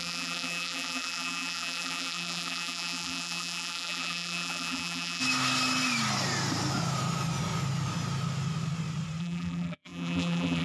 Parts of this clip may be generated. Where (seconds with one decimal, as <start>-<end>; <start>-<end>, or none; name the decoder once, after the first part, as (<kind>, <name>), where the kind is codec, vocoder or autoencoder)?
0.0-5.2 (vocoder, BigVGAN v2); 9.2-10.6